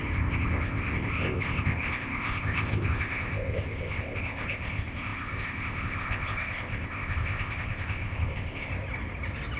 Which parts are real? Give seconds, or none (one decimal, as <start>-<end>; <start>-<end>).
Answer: 8.7-9.6